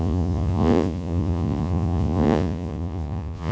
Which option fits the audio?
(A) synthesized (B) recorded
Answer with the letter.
A